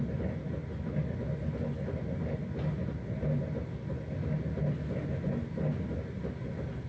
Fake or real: real